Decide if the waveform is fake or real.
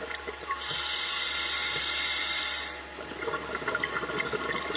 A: real